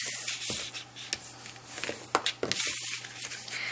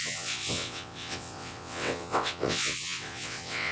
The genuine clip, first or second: first